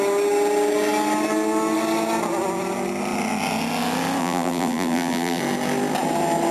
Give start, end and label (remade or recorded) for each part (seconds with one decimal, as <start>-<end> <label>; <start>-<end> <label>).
0.0-4.2 recorded; 4.2-5.4 remade; 5.4-6.5 recorded